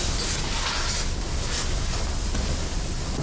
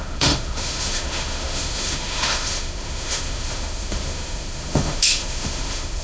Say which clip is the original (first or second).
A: first